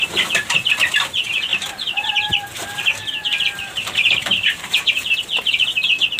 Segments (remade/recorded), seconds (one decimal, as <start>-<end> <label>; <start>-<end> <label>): 0.0-1.5 recorded; 1.5-5.1 remade; 5.1-6.2 recorded